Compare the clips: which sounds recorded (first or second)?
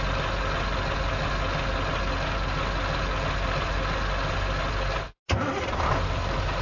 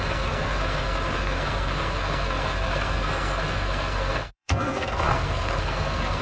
first